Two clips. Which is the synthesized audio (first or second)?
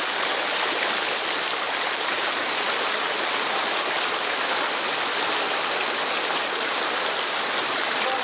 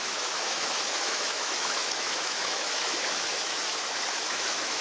second